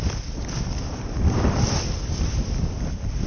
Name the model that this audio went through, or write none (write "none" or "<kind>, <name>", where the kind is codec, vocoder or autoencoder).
none